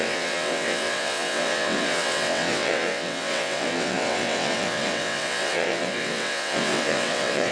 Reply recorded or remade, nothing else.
remade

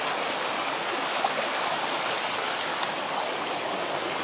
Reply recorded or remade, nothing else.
recorded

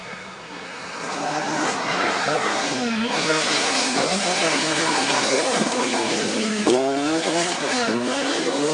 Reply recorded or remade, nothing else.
remade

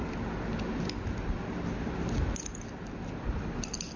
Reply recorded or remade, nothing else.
recorded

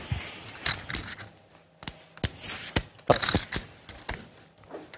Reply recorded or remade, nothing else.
recorded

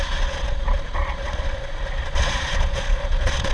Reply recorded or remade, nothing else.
remade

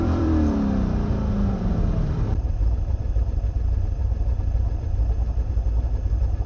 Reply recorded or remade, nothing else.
remade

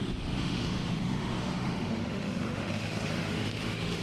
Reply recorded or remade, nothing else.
remade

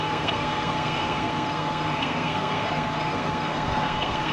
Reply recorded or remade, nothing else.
remade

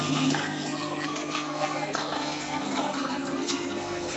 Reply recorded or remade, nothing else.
remade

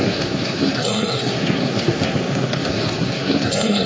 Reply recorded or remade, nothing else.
remade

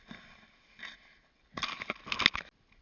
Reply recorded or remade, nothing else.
recorded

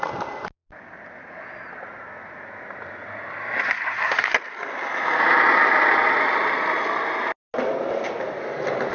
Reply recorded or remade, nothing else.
recorded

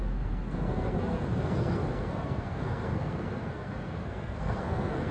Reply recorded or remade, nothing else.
remade